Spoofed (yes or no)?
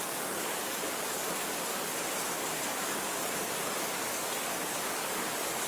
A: yes